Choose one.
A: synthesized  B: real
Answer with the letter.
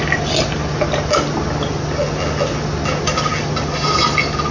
B